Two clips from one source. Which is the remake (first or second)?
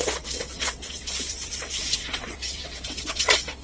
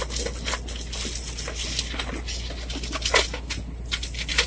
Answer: first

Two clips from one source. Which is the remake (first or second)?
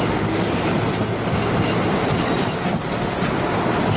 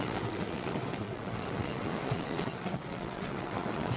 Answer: second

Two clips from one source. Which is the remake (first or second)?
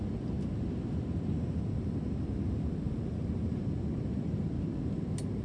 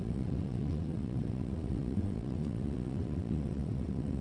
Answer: second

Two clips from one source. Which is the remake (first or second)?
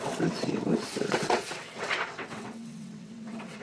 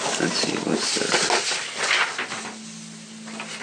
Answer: first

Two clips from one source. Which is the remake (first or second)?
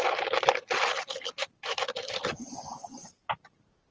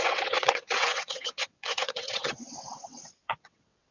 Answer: second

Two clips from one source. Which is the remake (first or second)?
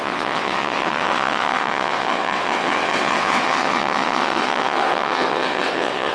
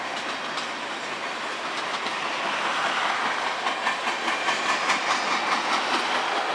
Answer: first